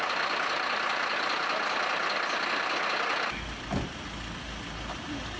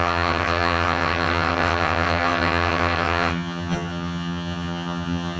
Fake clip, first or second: second